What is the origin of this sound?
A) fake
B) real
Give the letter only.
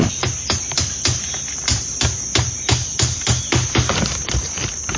B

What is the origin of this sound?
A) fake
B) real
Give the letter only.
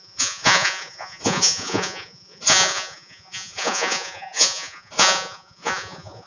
A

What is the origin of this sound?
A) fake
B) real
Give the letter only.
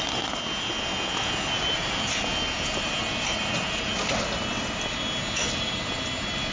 B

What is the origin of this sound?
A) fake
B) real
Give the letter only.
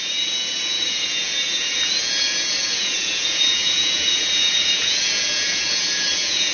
A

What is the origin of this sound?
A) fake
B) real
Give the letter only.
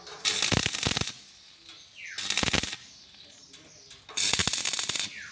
B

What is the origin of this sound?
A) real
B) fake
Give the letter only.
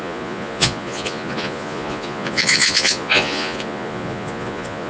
B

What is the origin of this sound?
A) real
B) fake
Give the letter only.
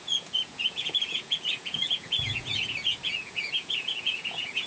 B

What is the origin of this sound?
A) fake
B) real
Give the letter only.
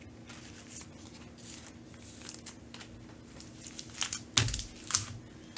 B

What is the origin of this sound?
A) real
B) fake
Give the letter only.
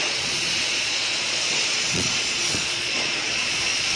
B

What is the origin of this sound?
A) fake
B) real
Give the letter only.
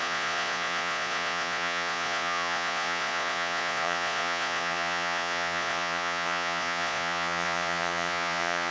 A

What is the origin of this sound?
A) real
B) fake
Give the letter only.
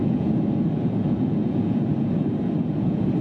B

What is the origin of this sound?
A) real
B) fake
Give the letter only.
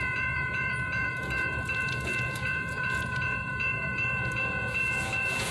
B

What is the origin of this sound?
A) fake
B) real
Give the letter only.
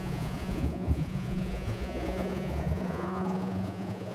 A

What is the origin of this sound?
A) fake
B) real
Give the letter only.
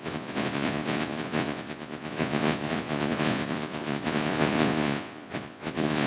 A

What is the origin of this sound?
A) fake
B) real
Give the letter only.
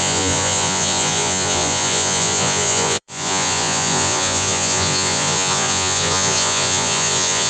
A